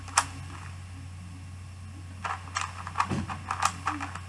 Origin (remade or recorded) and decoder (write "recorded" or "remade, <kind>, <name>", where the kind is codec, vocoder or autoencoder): recorded